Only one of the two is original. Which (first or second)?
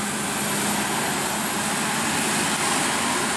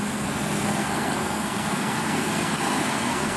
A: first